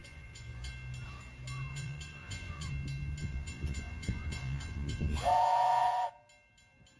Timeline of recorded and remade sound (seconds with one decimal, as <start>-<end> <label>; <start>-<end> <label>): 0.0-0.7 remade; 0.7-1.7 recorded; 1.7-2.7 remade; 2.7-3.2 recorded; 3.2-6.1 remade; 6.1-7.0 recorded